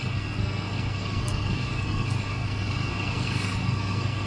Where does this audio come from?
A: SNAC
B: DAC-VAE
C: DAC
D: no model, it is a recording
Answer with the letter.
A